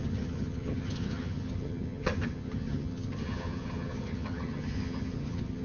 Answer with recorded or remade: remade